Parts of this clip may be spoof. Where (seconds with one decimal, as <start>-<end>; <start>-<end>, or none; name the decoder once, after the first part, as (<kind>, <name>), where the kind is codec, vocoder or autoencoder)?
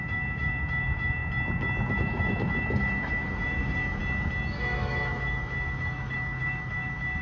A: 0.0-1.2 (autoencoder, DAC-VAE); 1.9-4.0; 4.6-7.2